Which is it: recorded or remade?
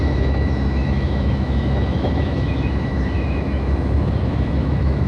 remade